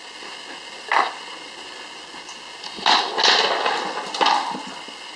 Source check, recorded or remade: recorded